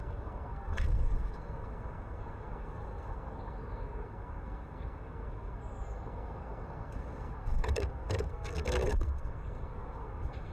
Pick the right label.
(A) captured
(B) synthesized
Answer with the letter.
B